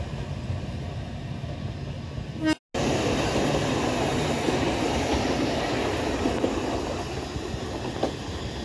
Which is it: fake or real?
real